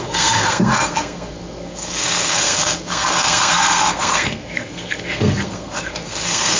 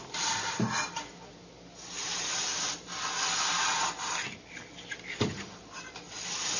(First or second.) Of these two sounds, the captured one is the second